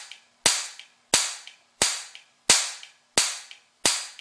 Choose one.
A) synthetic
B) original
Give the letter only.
B